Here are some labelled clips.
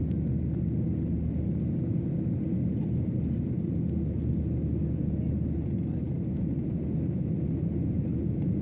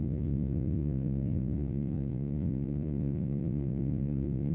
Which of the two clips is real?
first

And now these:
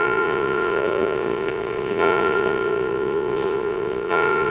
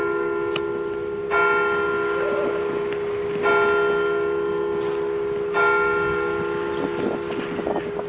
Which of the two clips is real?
second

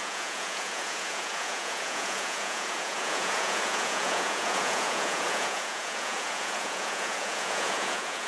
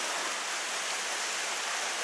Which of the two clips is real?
second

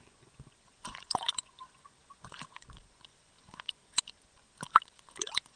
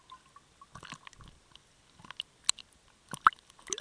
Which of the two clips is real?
second